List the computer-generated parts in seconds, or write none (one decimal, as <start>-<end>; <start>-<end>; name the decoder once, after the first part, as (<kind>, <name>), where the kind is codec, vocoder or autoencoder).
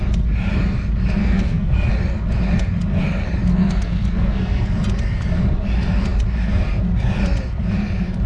1.2-1.9 (codec, SNAC); 3.5-4.7